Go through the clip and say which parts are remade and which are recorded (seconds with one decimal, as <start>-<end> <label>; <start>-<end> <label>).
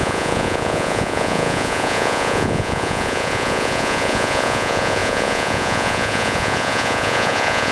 0.0-7.7 remade